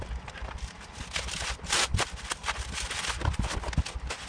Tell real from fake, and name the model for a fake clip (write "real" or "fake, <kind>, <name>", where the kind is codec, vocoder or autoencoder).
real